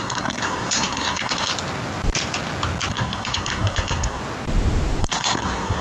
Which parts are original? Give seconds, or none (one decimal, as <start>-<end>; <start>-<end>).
1.5-2.9; 4.2-5.0